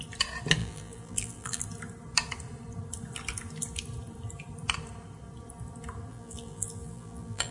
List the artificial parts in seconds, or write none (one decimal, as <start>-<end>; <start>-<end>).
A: 0.6-1.6; 6.1-7.5